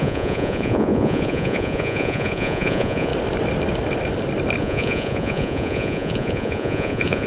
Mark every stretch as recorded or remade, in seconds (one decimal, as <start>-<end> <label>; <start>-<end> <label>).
0.0-3.1 remade; 3.1-4.6 recorded; 4.6-7.3 remade